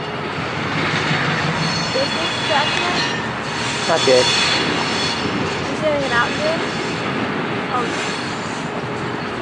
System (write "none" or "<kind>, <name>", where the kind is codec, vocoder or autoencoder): none